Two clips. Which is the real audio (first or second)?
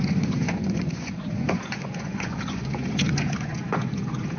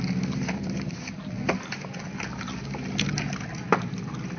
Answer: second